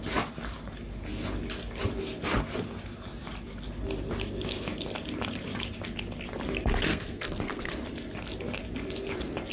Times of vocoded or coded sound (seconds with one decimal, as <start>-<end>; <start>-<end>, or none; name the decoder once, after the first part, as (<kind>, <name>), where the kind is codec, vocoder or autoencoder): 6.9-7.7 (codec, SNAC)